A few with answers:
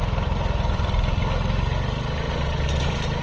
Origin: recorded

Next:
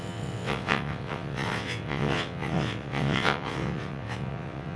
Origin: remade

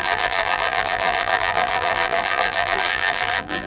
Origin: remade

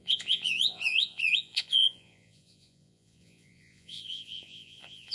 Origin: remade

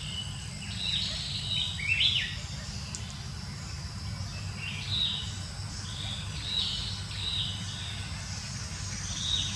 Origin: recorded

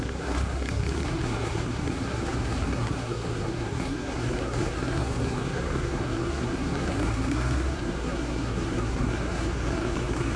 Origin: remade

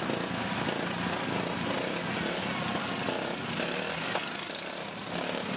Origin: recorded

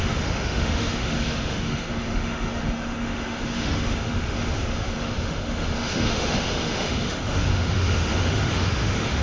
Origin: remade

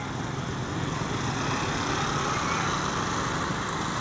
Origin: recorded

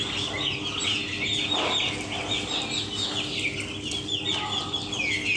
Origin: recorded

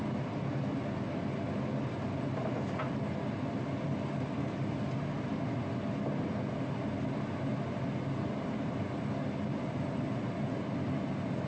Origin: recorded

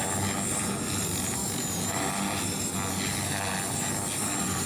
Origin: recorded